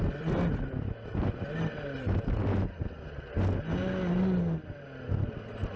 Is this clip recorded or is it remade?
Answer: recorded